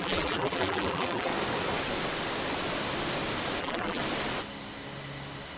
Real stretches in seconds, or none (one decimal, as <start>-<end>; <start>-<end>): 1.3-3.6; 4.0-5.6